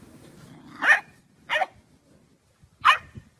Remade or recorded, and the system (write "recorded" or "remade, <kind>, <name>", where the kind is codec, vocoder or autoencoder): recorded